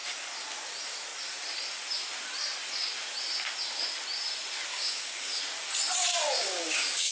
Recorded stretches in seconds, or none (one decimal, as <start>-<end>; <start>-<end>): 0.0-4.7; 5.4-6.1